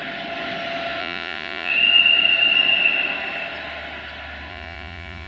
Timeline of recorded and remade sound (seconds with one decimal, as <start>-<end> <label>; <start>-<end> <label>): 0.0-1.0 recorded; 1.0-1.7 remade; 1.7-4.5 recorded; 4.5-5.3 remade